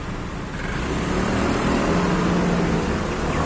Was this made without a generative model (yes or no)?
yes